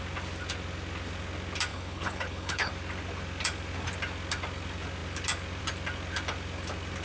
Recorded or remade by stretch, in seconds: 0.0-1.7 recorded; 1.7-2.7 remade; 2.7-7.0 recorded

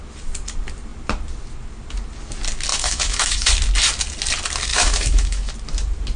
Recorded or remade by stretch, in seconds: 0.0-2.7 recorded; 2.7-3.5 remade; 3.5-4.7 recorded; 4.7-5.5 remade; 5.5-6.2 recorded